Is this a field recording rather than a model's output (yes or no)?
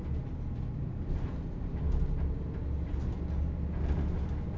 yes